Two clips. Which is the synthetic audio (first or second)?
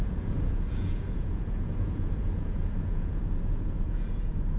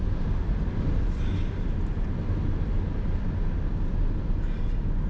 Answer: first